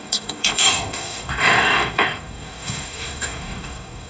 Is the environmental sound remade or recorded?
remade